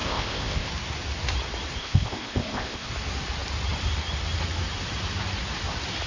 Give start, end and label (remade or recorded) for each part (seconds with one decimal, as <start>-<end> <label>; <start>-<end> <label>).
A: 0.0-0.7 remade; 0.7-1.8 recorded; 1.8-2.9 remade; 2.9-6.1 recorded